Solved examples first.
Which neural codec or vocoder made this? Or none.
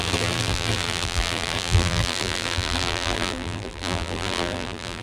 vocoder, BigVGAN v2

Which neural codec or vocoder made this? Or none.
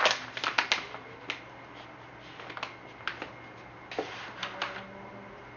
none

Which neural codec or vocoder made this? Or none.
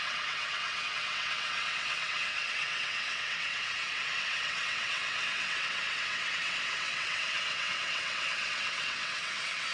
vocoder, WaveNeXt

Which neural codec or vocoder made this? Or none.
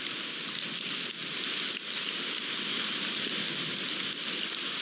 none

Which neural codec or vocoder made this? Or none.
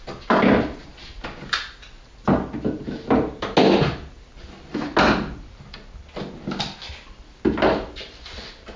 none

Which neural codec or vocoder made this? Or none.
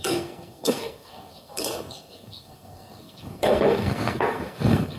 codec, SNAC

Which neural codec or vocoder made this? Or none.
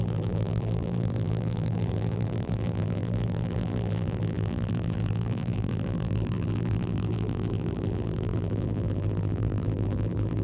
vocoder, BigVGAN v2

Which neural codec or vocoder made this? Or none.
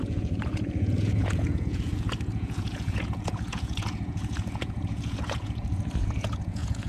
vocoder, Vocos